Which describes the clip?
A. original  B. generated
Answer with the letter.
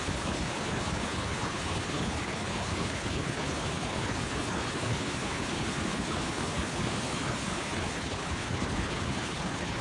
B